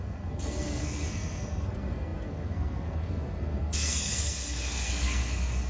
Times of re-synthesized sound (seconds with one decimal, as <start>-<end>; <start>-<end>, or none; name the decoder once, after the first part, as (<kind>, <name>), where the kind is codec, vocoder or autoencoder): 0.0-5.7 (codec, SNAC)